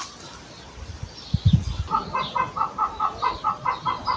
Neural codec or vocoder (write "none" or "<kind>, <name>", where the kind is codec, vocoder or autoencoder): none